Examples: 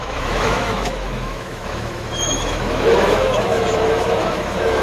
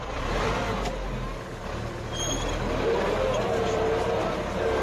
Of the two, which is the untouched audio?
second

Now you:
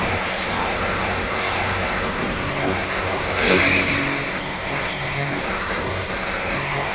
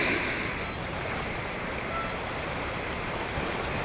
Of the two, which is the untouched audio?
second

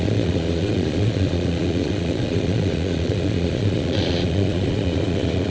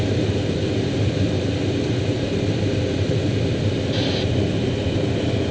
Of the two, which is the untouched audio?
second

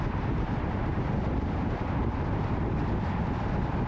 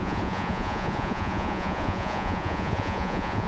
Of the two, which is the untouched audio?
first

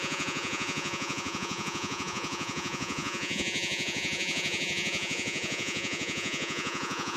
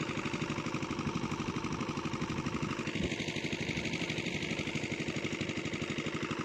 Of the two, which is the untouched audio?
second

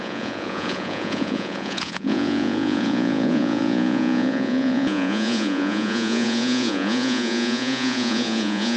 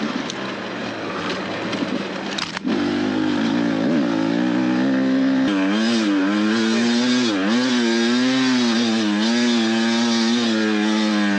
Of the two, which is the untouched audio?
second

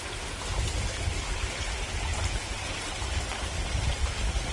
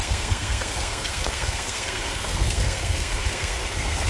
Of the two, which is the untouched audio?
first